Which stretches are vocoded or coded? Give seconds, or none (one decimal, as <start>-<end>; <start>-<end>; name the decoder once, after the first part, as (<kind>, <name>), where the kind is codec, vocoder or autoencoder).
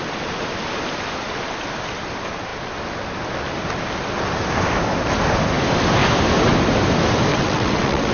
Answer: 7.3-8.1 (vocoder, WaveNeXt)